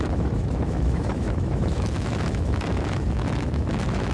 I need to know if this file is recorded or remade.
remade